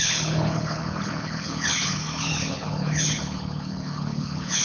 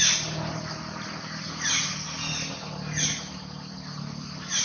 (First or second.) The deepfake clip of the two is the first